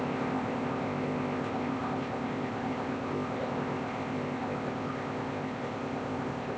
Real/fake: fake